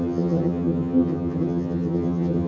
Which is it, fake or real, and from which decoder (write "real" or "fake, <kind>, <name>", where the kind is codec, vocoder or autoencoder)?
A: fake, vocoder, HiFi-GAN